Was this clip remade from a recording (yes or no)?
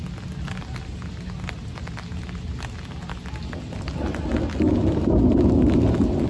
no